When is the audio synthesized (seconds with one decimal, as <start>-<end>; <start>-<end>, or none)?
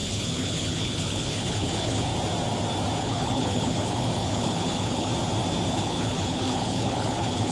0.0-2.1; 3.0-5.1; 5.7-7.5